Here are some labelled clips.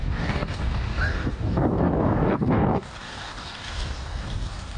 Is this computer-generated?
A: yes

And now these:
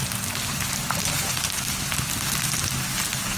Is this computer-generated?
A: no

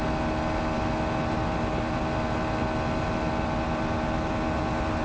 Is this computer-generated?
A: no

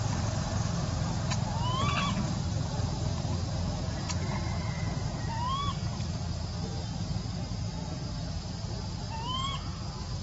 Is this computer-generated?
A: no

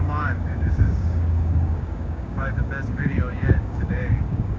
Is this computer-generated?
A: yes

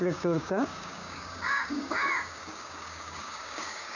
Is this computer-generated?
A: yes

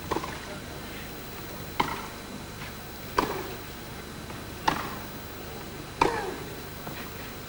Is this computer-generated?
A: no